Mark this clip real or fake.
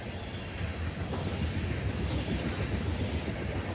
real